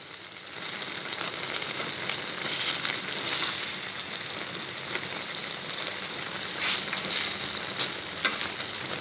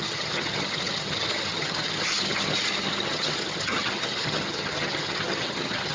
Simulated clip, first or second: second